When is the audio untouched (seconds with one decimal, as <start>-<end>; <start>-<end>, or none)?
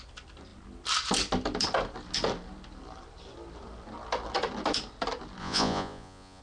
0.0-5.4